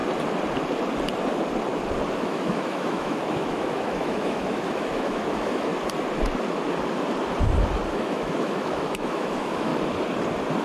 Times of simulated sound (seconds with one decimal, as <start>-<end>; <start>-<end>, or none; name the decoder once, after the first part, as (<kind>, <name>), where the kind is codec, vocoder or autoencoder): 2.1-5.7 (autoencoder, DAC-VAE); 7.9-9.7